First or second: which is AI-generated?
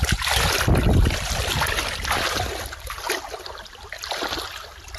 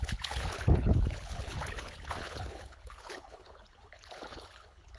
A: second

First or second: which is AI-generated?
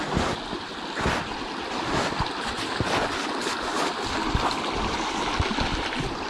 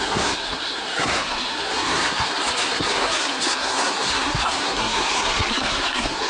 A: second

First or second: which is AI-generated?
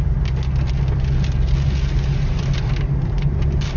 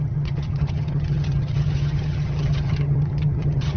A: second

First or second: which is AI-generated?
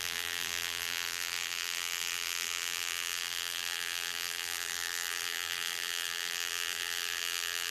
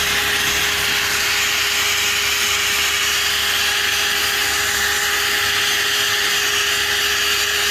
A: first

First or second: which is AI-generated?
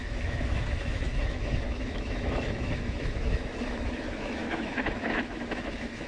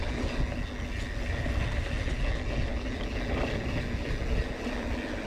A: first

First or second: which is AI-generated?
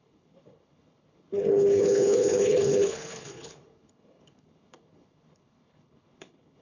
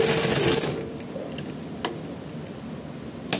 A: first